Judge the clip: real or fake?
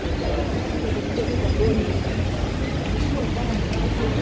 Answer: real